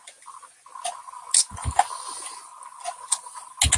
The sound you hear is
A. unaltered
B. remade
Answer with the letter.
A